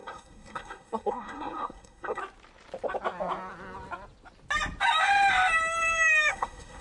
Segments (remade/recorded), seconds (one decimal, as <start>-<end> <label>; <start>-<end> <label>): 0.0-2.2 remade; 2.2-6.3 recorded; 6.3-6.8 remade